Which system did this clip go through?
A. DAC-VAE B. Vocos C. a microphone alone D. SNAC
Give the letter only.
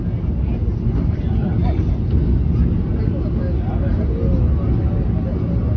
C